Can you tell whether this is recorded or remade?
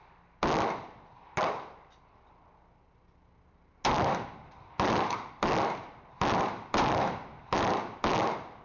recorded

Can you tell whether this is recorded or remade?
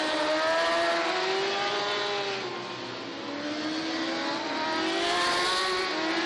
recorded